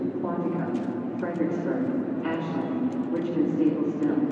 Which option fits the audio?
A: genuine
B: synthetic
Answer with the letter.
A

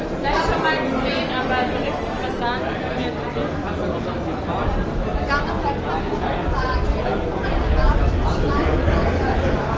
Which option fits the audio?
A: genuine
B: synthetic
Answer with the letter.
A